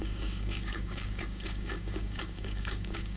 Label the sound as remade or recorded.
remade